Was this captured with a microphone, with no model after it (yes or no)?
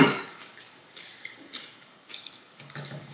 no